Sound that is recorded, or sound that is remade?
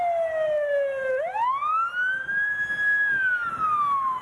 recorded